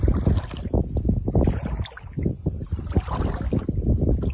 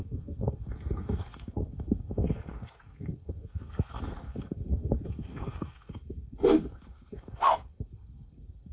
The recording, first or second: first